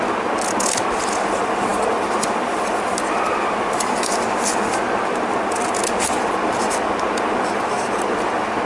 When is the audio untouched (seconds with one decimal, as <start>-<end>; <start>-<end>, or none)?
0.0-8.7